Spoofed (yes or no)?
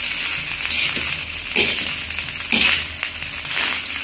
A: no